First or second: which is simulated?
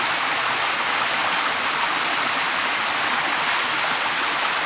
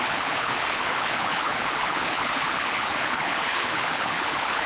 second